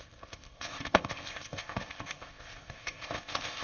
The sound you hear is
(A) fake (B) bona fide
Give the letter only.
A